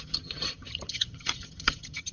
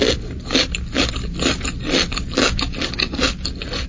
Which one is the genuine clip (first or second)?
second